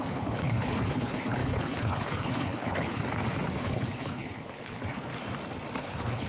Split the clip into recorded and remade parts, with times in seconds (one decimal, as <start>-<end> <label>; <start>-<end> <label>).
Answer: 0.0-3.0 remade; 3.0-3.6 recorded; 3.6-5.1 remade; 5.1-5.8 recorded; 5.8-6.3 remade